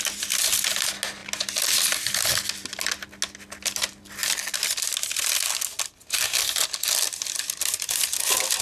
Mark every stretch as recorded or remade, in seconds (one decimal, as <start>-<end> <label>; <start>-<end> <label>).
0.0-8.6 recorded